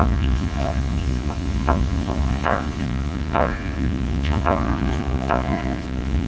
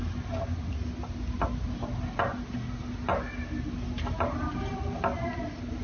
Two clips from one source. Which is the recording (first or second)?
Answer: second